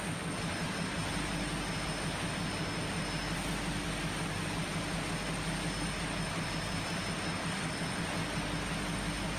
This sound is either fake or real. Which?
real